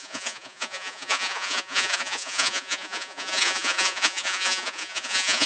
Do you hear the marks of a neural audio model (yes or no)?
yes